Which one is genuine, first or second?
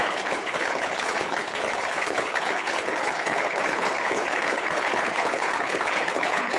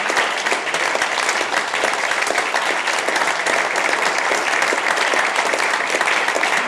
second